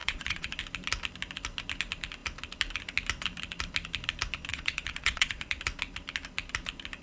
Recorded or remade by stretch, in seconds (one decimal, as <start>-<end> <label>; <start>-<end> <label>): 0.0-0.6 remade; 0.6-4.5 recorded; 4.5-5.6 remade; 5.6-7.0 recorded